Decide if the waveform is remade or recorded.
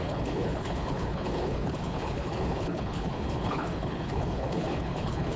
remade